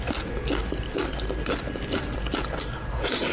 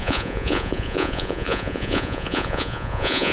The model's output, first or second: second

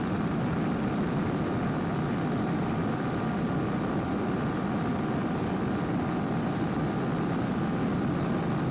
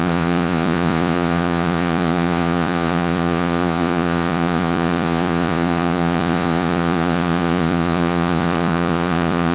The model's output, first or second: second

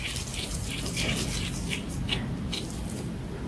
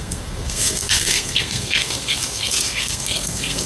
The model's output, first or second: second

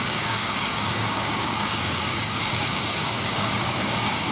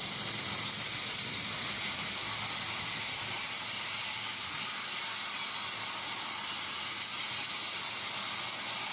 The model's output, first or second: first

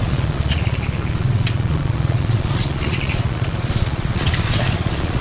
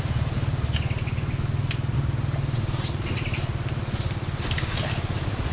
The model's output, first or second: first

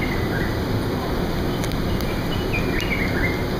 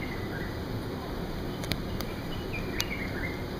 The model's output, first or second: second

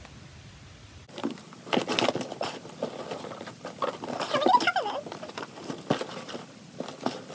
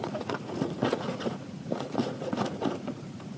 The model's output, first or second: second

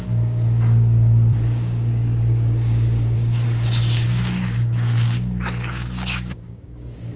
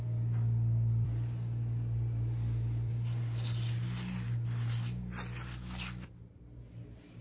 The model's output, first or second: first